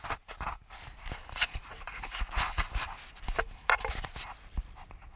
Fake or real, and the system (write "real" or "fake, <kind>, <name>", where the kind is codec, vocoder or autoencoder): real